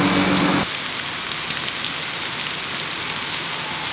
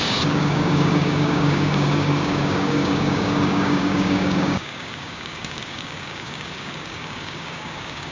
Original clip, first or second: first